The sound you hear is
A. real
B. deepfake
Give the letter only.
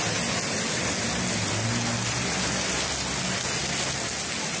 A